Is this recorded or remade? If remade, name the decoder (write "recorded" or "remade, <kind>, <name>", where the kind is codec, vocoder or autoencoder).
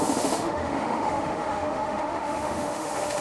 remade, autoencoder, DAC-VAE